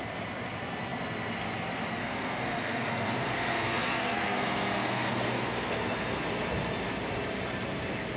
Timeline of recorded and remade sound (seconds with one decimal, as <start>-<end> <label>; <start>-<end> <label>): 0.0-2.0 recorded; 2.0-6.2 remade; 6.2-8.2 recorded